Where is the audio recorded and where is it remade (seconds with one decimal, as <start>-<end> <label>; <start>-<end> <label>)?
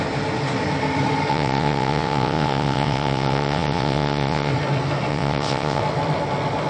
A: 0.0-1.3 recorded; 1.3-4.5 remade; 4.5-5.1 recorded; 5.1-5.8 remade; 5.8-6.7 recorded